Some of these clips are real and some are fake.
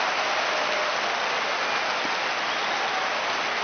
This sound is real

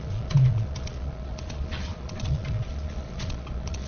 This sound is fake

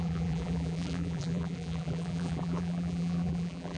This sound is fake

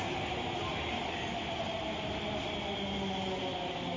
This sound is real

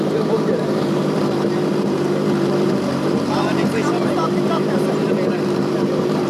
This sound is fake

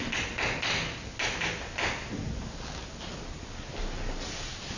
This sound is real